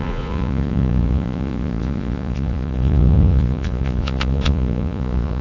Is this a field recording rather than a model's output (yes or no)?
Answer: no